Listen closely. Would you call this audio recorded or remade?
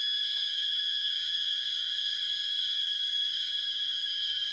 remade